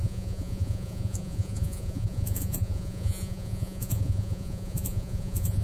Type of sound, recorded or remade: remade